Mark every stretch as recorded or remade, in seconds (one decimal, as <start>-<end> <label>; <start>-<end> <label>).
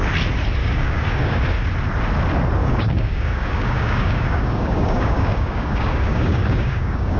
0.0-0.6 recorded; 0.6-1.4 remade; 1.4-2.6 recorded; 2.6-7.2 remade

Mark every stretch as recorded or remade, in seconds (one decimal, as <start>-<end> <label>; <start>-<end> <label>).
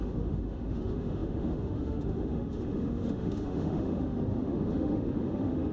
0.0-5.7 remade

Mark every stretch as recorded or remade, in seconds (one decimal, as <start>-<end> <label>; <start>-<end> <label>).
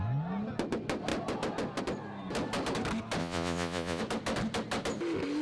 0.0-3.2 recorded; 3.2-4.0 remade; 4.0-5.4 recorded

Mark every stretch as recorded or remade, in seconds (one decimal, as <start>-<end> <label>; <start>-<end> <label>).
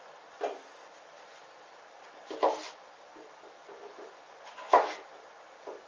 0.0-3.6 recorded; 3.6-4.6 remade; 4.6-5.9 recorded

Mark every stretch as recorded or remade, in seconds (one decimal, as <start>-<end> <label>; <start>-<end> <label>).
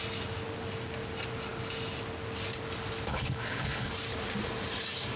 0.0-3.1 recorded; 3.1-3.9 remade; 3.9-5.2 recorded